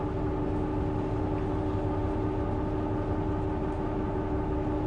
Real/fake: real